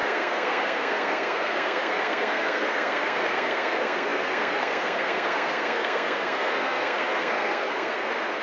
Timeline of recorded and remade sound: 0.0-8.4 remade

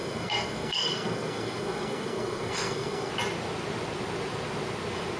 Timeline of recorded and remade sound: 0.0-3.1 remade; 3.1-5.2 recorded

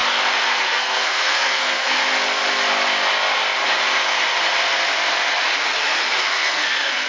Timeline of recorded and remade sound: 0.0-0.5 recorded; 0.5-2.0 remade; 2.0-6.2 recorded; 6.2-7.1 remade

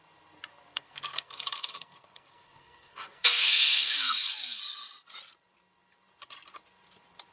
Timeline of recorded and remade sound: 0.0-0.7 recorded; 0.7-4.6 remade; 4.6-7.3 recorded

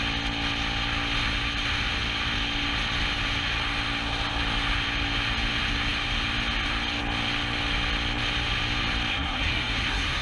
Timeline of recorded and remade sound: 0.0-9.1 recorded; 9.1-10.2 remade

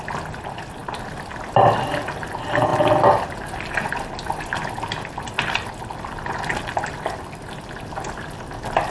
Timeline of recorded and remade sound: 0.0-8.9 recorded

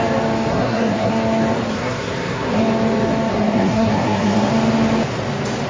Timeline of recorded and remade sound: 0.0-0.5 recorded; 0.5-1.1 remade; 1.1-1.7 recorded; 1.7-2.6 remade; 2.6-3.3 recorded; 3.3-4.5 remade; 4.5-5.7 recorded

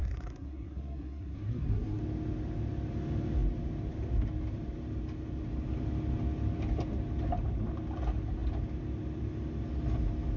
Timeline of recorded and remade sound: 0.0-2.0 remade; 2.0-10.4 recorded